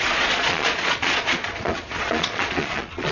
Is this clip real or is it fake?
fake